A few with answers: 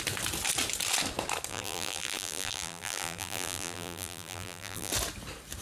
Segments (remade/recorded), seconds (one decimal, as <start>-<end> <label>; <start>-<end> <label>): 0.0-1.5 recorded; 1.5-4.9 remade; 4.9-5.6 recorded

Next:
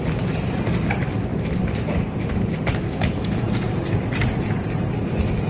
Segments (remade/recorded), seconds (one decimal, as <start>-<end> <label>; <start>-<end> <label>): 0.0-5.5 recorded

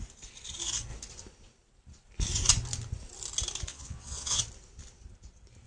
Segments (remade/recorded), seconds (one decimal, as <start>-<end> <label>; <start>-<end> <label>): 0.0-3.7 recorded; 3.7-4.4 remade; 4.4-5.7 recorded

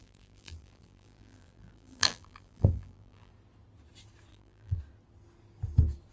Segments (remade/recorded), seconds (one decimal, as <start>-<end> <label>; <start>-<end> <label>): 0.0-3.3 remade; 3.3-4.3 recorded; 4.3-4.8 remade; 4.8-6.1 recorded